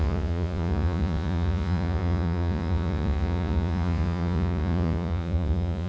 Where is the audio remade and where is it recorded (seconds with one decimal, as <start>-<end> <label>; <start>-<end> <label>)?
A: 0.0-5.9 remade

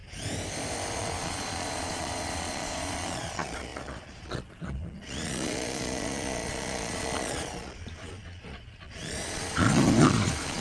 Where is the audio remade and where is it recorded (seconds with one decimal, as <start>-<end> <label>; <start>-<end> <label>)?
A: 0.0-0.9 recorded; 0.9-10.6 remade